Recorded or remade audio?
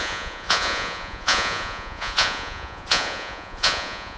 remade